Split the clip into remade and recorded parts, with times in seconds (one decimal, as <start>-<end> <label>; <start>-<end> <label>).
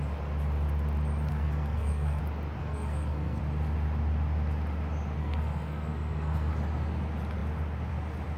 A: 0.0-1.3 recorded; 1.3-2.2 remade; 2.2-2.6 recorded; 2.6-3.4 remade; 3.4-5.2 recorded; 5.2-6.5 remade; 6.5-8.4 recorded